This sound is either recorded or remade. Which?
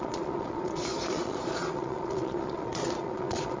remade